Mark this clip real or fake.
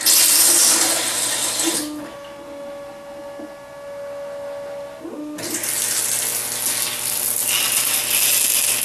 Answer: real